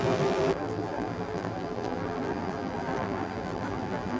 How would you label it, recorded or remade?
remade